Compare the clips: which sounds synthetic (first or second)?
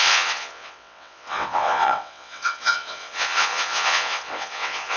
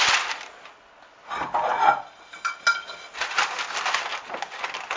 first